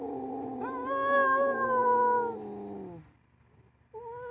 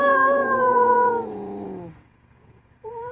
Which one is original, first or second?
first